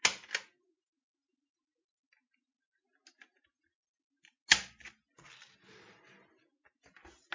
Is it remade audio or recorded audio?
recorded